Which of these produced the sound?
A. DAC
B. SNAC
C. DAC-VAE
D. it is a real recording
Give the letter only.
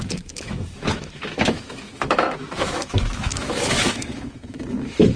C